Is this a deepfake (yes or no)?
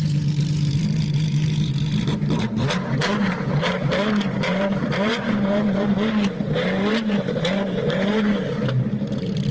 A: yes